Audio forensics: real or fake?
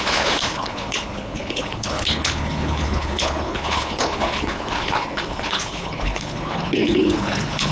fake